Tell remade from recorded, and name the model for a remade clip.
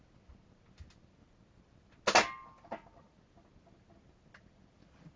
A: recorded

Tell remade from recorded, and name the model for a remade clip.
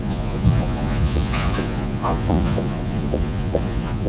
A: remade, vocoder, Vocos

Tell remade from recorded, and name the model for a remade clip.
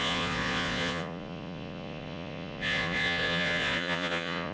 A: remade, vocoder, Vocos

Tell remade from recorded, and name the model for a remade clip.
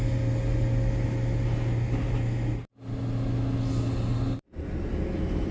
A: recorded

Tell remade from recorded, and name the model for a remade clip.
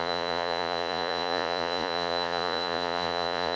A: remade, vocoder, Vocos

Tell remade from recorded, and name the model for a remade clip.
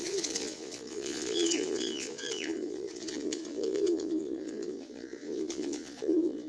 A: remade, vocoder, Vocos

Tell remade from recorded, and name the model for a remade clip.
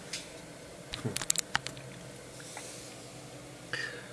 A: recorded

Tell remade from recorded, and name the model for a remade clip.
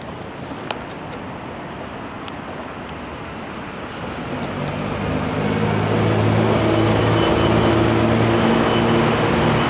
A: recorded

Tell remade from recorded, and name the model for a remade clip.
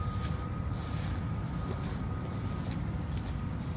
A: recorded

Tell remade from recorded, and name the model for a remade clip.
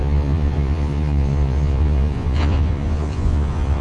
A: remade, vocoder, Vocos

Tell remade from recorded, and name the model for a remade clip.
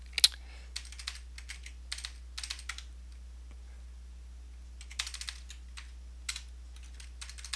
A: recorded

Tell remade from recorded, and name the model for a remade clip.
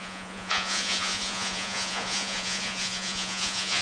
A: remade, vocoder, Vocos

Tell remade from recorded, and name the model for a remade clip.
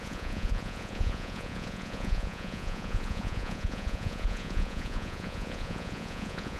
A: remade, vocoder, Vocos